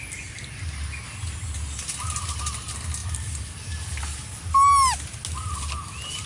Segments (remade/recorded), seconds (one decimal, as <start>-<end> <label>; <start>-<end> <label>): 0.0-6.3 recorded